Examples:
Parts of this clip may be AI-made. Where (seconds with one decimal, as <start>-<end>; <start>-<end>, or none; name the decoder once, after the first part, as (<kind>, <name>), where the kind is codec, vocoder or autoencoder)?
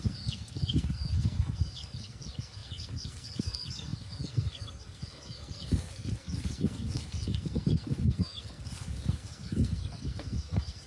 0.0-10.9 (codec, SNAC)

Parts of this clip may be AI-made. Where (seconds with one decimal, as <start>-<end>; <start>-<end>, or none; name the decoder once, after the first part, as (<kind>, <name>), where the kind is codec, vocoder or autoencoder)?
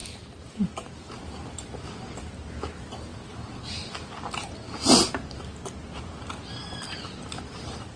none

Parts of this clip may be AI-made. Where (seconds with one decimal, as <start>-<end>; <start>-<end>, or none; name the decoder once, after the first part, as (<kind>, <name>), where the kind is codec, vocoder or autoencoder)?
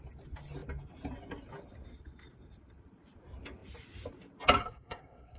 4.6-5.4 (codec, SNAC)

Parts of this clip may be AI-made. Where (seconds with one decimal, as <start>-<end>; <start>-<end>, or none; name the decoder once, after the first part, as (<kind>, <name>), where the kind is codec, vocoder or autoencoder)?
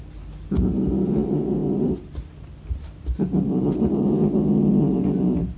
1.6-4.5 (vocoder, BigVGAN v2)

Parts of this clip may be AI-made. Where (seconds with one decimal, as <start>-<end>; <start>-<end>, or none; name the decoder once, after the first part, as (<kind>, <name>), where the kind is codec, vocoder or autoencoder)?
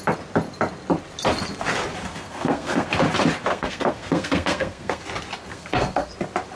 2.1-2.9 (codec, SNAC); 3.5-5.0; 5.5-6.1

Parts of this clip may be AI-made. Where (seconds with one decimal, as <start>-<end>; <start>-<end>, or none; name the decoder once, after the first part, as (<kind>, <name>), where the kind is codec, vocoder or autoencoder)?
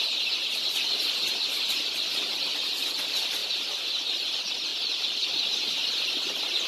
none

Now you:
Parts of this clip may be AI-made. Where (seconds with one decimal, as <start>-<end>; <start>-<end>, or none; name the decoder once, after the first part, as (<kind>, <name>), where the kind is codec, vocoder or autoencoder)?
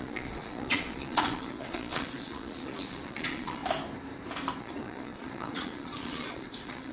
0.0-3.6 (vocoder, Vocos); 4.6-6.9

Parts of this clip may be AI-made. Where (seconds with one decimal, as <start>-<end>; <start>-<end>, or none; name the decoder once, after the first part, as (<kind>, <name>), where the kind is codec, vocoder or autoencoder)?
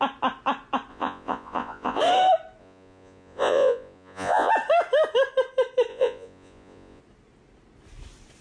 0.9-2.0 (vocoder, Vocos); 2.6-4.5; 5.9-7.0